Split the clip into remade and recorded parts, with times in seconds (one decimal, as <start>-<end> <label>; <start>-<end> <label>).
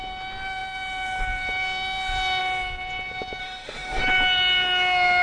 0.0-3.4 recorded; 3.4-4.0 remade; 4.0-5.2 recorded